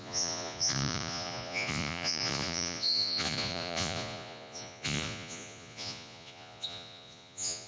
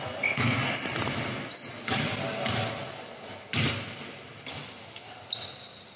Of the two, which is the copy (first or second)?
first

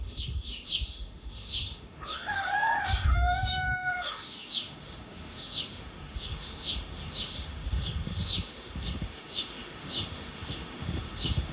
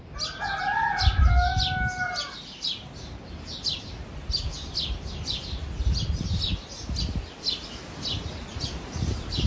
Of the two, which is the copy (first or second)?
first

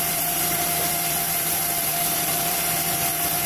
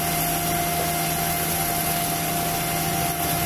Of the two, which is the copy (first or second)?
first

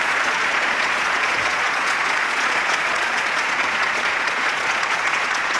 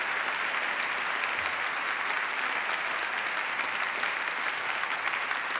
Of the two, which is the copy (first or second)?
first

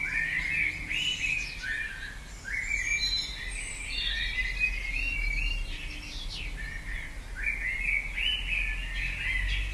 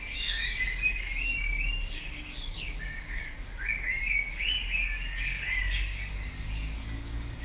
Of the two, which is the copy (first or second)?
second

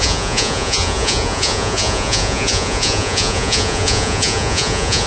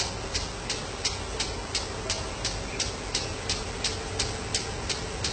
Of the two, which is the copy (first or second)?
first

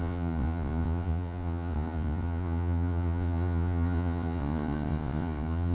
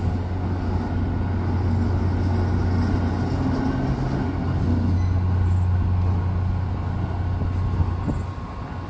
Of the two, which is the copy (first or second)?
first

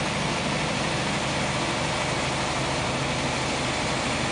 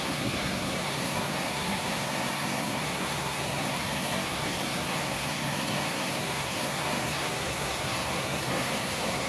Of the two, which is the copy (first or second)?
second